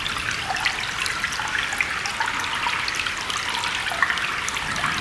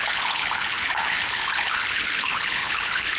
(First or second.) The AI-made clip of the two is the second